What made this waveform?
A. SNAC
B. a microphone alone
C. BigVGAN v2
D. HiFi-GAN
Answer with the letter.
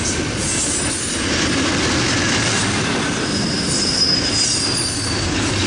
B